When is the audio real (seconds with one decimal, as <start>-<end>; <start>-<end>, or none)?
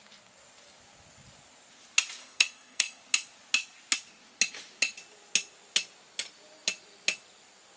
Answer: 0.0-2.2; 3.0-7.8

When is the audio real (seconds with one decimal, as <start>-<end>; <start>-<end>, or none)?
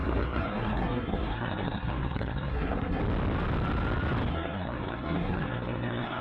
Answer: 3.0-4.3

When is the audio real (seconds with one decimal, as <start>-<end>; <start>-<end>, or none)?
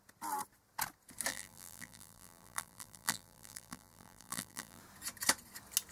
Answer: 0.0-1.3; 4.8-5.9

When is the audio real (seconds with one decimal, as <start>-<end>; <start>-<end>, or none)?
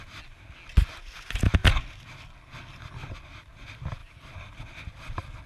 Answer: 0.0-4.0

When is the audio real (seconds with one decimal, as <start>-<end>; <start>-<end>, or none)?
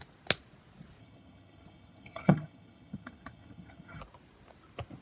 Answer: 0.0-1.0; 4.0-5.0